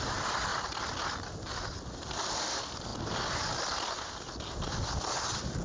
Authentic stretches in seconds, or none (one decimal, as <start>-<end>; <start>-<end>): 0.0-5.6